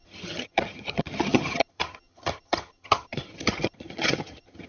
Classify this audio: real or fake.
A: fake